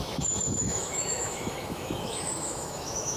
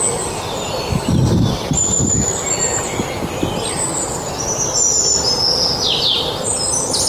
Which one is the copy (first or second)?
first